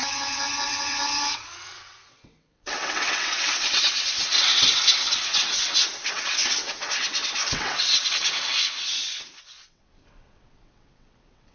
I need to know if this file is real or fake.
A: fake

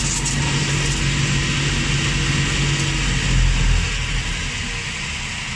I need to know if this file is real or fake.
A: real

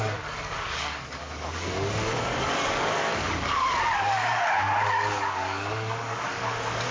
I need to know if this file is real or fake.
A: fake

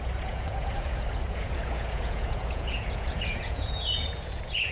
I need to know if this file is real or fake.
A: fake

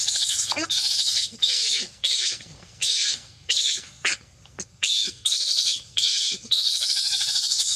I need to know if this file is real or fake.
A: fake